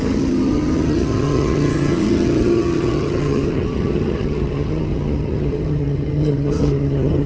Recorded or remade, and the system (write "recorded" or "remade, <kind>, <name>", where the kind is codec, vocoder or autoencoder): remade, vocoder, HiFi-GAN